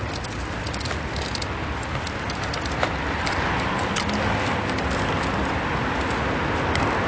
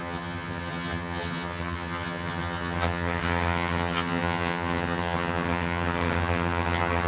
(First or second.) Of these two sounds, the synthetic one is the second